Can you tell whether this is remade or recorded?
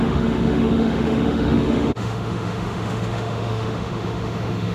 remade